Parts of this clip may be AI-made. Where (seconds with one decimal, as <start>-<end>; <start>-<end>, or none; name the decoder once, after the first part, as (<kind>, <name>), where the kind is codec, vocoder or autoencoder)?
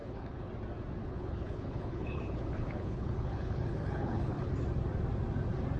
0.0-0.5 (codec, HILCodec); 1.0-4.5